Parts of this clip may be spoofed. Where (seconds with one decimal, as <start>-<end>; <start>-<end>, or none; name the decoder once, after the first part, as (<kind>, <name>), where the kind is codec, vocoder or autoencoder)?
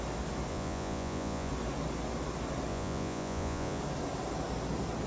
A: 0.5-1.5 (vocoder, Vocos); 2.7-3.8